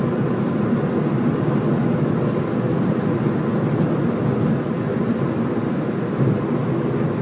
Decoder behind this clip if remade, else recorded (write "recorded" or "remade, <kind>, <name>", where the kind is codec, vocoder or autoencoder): recorded